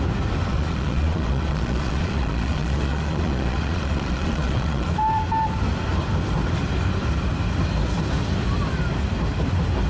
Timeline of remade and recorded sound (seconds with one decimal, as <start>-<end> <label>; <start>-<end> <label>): 0.0-0.5 recorded; 0.5-4.9 remade; 4.9-9.9 recorded